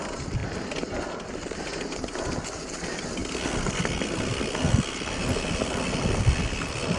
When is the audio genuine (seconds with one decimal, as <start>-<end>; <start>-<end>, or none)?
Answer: 0.0-7.0